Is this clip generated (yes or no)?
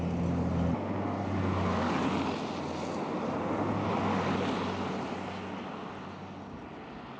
no